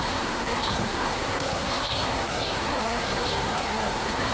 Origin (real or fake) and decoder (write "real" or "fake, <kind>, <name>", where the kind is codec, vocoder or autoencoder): fake, codec, SNAC